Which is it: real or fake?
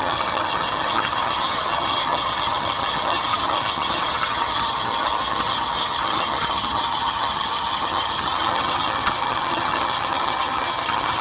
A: fake